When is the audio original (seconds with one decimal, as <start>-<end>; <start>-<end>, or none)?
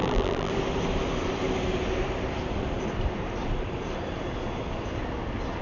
0.5-5.6